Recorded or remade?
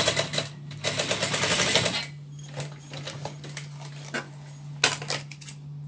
recorded